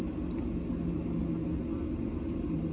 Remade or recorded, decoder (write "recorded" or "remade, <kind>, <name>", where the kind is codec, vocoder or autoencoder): recorded